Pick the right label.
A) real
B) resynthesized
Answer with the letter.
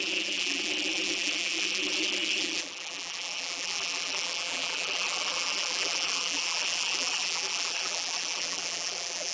B